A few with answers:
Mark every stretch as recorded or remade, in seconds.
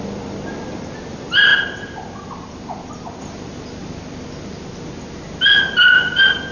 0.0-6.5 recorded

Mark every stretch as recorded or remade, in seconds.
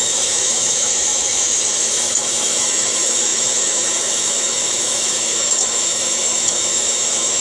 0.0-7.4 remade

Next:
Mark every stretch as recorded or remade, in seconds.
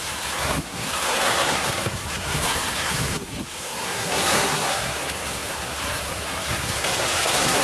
0.0-7.6 remade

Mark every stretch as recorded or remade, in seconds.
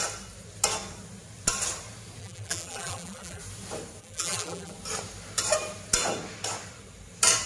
0.0-2.2 recorded; 2.2-3.4 remade; 3.4-4.0 recorded; 4.0-4.7 remade; 4.7-7.5 recorded